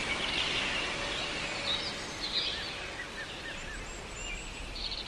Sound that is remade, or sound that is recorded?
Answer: recorded